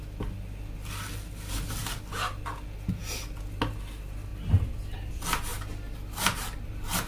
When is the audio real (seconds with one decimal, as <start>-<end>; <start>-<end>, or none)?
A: 0.0-7.1